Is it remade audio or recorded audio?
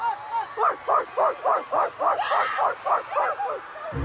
recorded